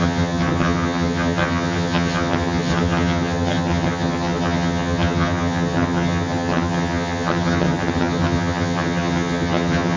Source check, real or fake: fake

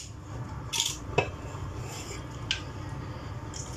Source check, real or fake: real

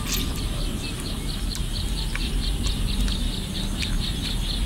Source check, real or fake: real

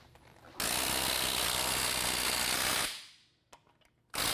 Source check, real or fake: real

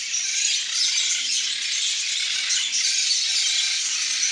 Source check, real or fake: real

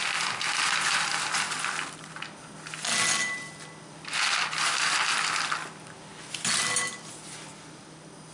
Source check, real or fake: real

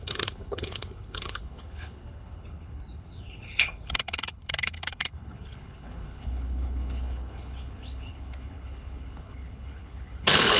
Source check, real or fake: fake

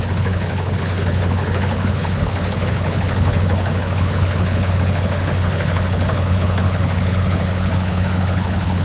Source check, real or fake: fake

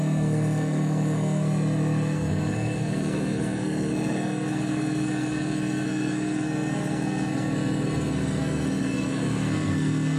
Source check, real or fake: fake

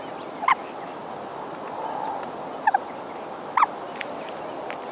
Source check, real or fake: real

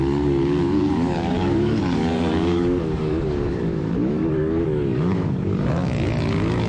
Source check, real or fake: fake